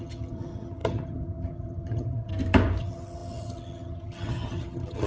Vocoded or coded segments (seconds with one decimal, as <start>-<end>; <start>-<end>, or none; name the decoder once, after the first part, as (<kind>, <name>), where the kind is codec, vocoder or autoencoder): 0.0-2.3 (vocoder, HiFi-GAN); 2.8-5.1